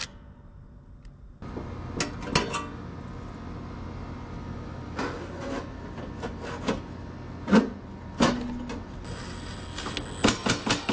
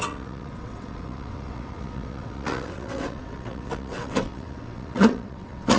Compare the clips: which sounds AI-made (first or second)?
second